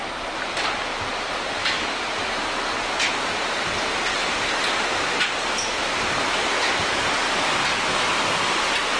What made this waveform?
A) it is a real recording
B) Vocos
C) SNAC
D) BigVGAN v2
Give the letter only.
A